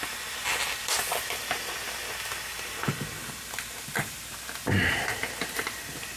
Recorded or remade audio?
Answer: recorded